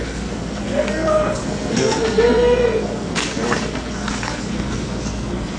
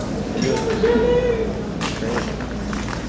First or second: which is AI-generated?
first